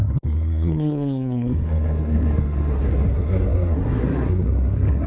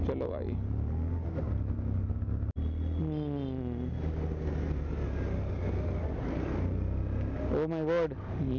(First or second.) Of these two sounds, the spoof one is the first